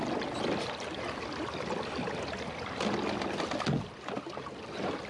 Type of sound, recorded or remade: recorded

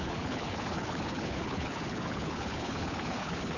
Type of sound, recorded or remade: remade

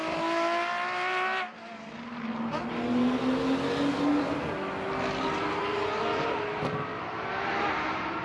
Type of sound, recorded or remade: recorded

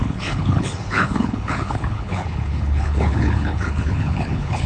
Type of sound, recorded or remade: remade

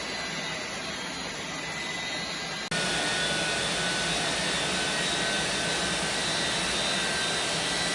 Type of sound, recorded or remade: recorded